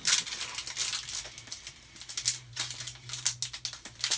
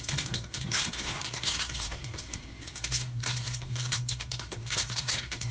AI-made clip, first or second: second